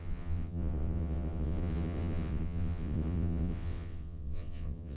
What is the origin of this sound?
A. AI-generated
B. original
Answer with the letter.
A